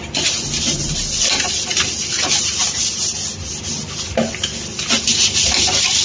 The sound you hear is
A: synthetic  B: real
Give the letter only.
B